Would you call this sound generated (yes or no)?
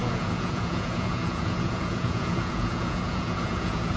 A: yes